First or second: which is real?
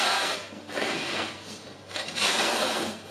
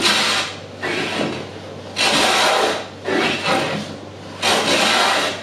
second